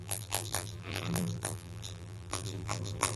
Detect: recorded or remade remade